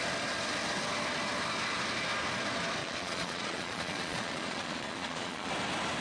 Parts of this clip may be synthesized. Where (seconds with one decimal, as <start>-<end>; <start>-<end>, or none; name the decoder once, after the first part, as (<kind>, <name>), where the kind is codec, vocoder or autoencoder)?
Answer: 2.8-5.5 (vocoder, Vocos)